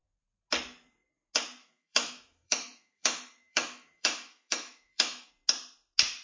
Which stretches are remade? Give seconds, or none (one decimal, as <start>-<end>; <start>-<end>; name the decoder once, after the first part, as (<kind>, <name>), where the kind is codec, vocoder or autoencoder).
1.6-5.3 (autoencoder, DAC-VAE)